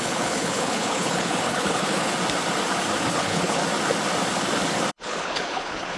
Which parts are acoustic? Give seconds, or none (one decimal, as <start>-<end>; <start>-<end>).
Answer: 2.1-3.1; 3.6-4.9